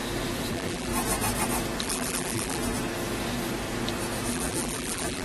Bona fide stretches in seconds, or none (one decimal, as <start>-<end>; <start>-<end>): 0.0-0.5; 0.9-1.8; 2.6-4.3